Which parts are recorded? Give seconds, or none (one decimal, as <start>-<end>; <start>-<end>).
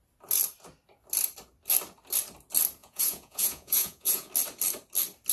0.0-2.8; 4.3-5.3